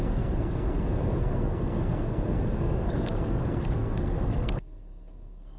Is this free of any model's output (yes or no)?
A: no